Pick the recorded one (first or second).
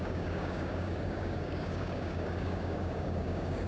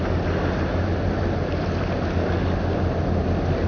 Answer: second